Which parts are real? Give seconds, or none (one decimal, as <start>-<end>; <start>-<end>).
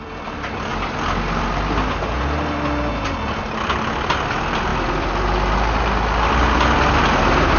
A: 0.7-3.4